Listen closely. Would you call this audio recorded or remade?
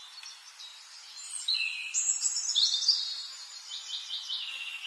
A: recorded